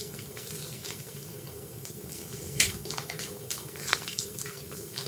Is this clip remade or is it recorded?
remade